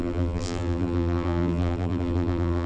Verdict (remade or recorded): remade